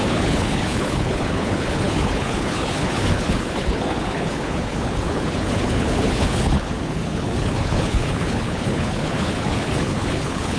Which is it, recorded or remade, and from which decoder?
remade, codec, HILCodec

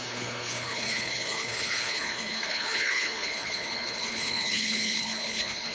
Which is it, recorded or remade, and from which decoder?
remade, codec, HILCodec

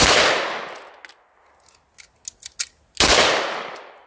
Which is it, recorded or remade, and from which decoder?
recorded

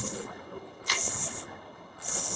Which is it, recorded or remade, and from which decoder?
remade, codec, HILCodec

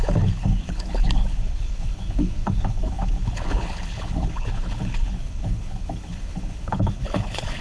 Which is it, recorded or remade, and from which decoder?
remade, codec, HILCodec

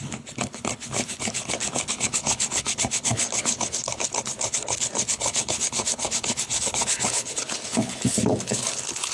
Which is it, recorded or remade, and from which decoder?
remade, codec, HILCodec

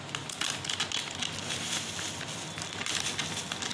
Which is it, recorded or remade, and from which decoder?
recorded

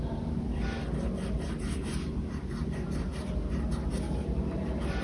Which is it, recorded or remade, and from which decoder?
recorded